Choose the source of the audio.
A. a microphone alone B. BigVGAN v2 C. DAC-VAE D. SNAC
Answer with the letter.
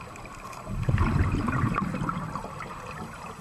A